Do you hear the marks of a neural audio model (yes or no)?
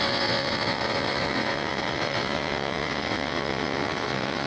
yes